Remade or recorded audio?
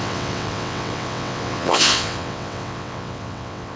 remade